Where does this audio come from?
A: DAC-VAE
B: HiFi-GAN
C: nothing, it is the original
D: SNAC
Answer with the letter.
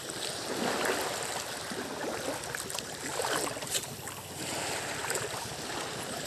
C